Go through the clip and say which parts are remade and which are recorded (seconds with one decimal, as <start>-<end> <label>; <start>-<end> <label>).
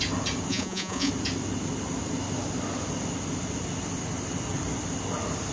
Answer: 0.0-0.5 recorded; 0.5-1.1 remade; 1.1-5.5 recorded